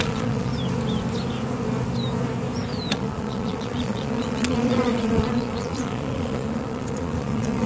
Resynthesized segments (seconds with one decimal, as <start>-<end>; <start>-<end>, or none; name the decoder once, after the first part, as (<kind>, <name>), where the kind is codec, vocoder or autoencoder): 0.0-0.5 (vocoder, Vocos); 2.9-7.7